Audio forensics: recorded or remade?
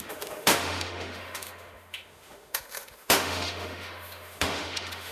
remade